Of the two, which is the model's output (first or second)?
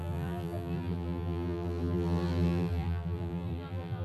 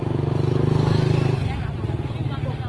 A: first